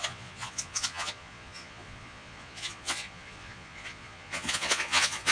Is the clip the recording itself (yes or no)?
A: no